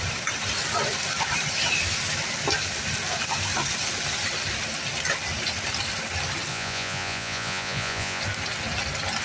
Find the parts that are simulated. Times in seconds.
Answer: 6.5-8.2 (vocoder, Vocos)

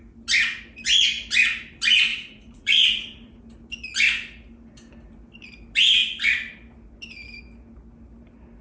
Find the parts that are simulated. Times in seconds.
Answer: 2.1-3.4 (vocoder, Vocos)